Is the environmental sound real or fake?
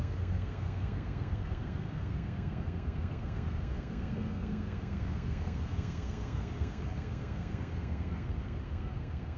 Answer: fake